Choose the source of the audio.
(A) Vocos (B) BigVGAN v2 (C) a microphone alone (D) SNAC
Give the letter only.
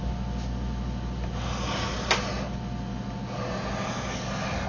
C